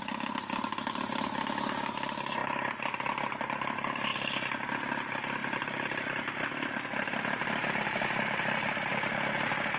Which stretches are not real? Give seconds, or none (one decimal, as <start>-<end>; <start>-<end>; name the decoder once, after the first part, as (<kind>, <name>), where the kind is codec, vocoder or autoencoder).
2.4-3.2 (vocoder, BigVGAN v2); 5.4-9.3